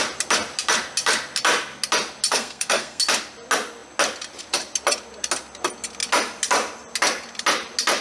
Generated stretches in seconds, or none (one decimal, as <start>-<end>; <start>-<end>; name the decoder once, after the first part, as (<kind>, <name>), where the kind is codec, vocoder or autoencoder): 2.3-3.0 (codec, SNAC)